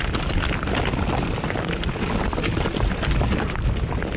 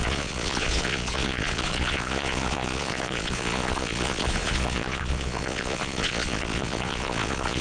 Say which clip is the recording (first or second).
first